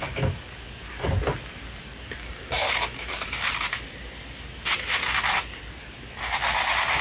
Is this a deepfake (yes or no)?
no